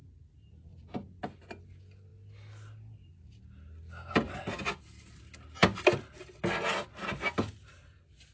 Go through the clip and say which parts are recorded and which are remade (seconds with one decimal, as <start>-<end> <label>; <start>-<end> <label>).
0.0-8.3 recorded